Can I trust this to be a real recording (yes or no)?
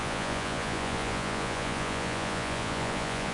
no